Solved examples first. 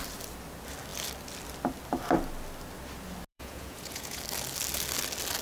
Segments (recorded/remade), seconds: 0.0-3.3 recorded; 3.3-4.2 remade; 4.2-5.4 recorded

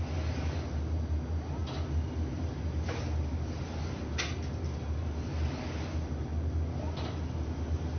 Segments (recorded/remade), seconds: 0.0-8.0 recorded